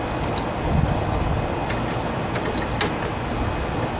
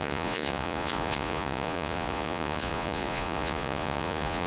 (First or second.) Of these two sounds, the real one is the first